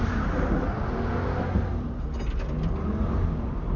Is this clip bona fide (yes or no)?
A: yes